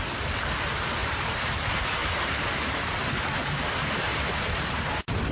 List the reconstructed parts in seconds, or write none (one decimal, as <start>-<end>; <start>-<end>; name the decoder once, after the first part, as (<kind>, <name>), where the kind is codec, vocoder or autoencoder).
1.0-1.6 (vocoder, BigVGAN v2); 2.0-5.3